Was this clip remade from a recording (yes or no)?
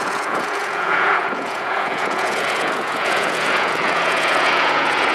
yes